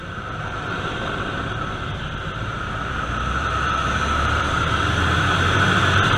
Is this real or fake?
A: fake